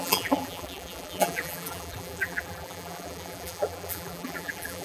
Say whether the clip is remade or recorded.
remade